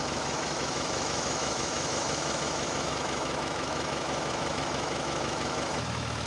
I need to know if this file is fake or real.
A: fake